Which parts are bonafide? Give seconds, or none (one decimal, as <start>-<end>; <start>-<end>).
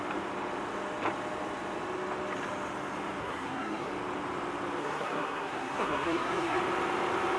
0.0-3.2; 3.9-4.8; 6.6-7.4